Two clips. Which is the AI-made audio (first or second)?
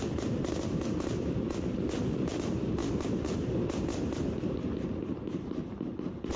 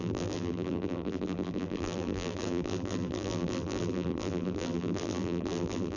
second